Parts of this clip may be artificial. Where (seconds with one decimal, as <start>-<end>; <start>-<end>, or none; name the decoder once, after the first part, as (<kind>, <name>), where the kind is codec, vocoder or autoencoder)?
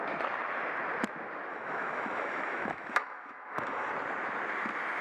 1.5-3.9 (autoencoder, DAC-VAE)